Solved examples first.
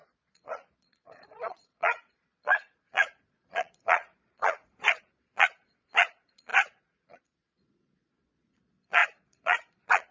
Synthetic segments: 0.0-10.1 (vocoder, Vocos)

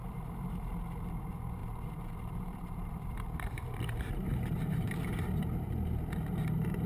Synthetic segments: 0.0-0.7 (vocoder, BigVGAN v2); 1.6-5.7

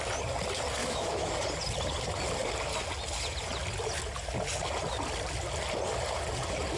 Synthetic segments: 0.8-1.3 (autoencoder, DAC-VAE)